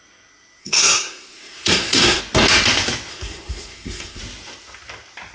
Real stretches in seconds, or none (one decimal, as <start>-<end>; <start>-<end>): 0.0-0.6; 2.2-3.1; 4.2-5.3